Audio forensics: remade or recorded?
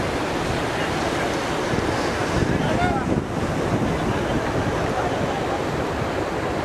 recorded